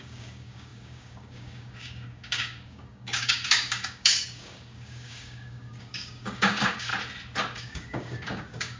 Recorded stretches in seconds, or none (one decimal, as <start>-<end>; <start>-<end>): 6.9-7.6